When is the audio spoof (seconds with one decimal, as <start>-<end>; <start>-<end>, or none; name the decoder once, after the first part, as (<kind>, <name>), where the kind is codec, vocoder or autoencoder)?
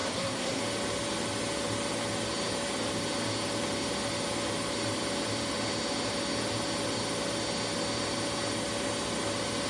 0.0-0.6 (codec, SNAC)